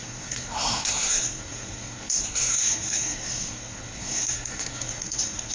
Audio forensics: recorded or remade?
remade